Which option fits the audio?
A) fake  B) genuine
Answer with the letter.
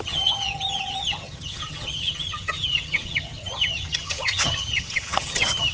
A